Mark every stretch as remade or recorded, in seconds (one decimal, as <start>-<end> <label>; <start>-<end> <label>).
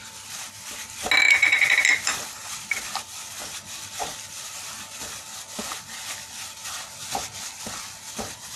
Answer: 0.0-1.9 recorded; 1.9-2.8 remade; 2.8-8.6 recorded